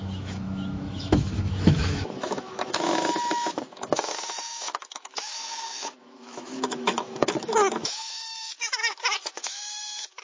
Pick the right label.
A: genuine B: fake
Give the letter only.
B